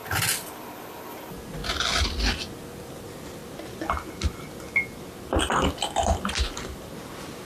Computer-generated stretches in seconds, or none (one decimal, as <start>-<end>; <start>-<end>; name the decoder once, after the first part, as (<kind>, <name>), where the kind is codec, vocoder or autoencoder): 1.1-1.6 (vocoder, BigVGAN v2); 2.6-3.4